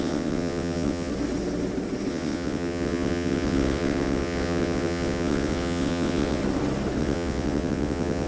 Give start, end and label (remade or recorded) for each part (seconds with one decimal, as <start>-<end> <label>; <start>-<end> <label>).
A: 0.0-1.1 remade; 1.1-2.1 recorded; 2.1-6.4 remade; 6.4-7.0 recorded; 7.0-8.3 remade